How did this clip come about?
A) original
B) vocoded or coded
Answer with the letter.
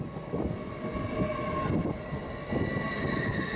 A